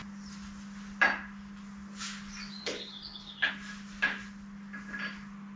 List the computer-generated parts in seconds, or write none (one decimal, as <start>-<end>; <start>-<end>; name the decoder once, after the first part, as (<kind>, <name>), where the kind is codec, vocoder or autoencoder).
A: 2.6-3.5 (codec, HILCodec)